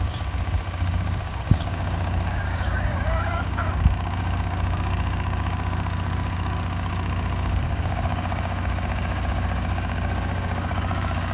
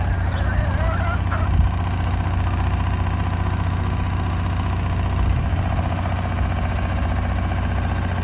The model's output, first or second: first